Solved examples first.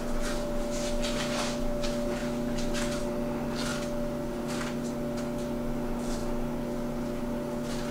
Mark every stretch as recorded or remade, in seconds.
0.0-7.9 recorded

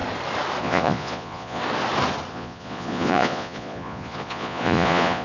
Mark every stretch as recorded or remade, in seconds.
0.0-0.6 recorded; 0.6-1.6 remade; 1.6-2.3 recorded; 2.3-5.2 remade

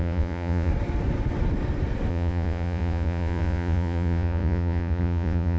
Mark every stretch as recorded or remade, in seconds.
0.0-0.7 remade; 0.7-2.1 recorded; 2.1-5.6 remade